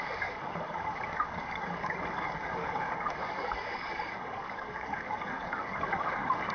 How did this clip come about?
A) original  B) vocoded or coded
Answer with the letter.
B